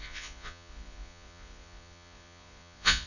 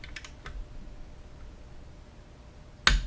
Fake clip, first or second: first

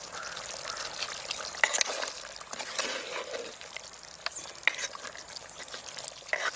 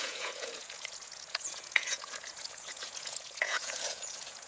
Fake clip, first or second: second